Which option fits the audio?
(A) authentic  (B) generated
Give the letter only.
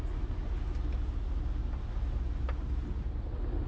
A